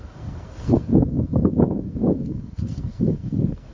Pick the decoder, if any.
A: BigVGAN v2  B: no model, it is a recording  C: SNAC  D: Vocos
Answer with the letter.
C